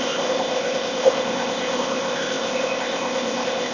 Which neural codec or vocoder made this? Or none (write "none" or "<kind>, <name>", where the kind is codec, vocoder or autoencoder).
codec, ZipCodec